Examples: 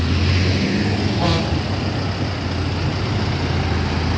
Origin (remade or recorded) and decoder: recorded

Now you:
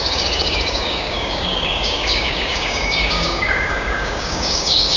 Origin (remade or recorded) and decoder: remade, codec, DAC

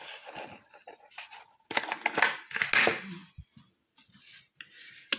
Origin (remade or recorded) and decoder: recorded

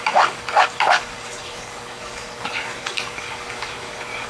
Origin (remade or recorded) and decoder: remade, codec, DAC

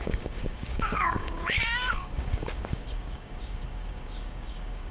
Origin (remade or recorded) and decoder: remade, codec, DAC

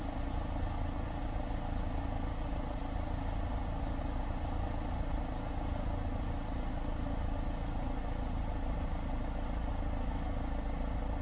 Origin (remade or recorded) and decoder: recorded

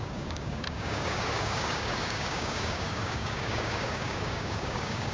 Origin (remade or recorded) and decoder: remade, codec, DAC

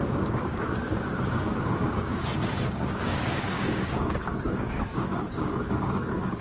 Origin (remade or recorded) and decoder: remade, codec, DAC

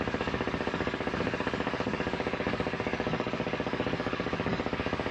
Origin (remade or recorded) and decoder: remade, codec, DAC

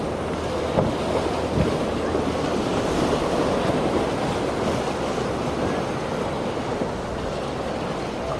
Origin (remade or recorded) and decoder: recorded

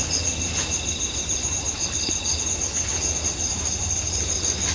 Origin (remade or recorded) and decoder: recorded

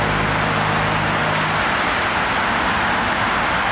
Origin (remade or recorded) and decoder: recorded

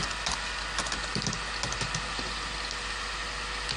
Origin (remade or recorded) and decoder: recorded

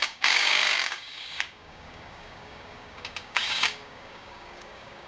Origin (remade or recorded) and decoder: remade, codec, DAC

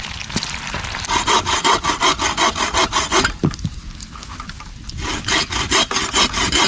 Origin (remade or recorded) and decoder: recorded